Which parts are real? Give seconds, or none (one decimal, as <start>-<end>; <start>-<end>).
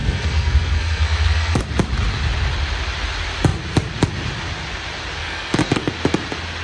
1.6-5.2; 5.9-6.6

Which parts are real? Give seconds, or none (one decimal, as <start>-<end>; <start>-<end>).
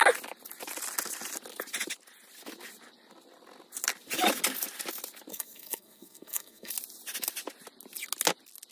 0.0-5.3; 6.7-8.7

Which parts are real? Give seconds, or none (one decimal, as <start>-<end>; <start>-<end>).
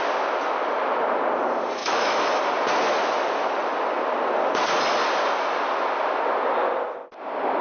0.0-1.8; 2.4-7.6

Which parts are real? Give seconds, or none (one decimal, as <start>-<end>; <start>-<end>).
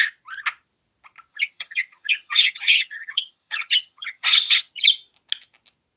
0.0-1.3; 4.7-6.0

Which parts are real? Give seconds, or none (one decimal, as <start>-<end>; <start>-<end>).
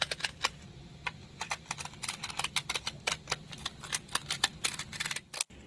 0.0-5.7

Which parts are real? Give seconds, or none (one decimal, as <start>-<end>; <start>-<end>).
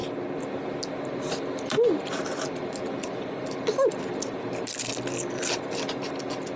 0.0-6.6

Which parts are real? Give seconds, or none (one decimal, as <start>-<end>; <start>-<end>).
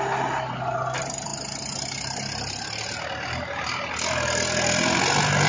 0.0-5.5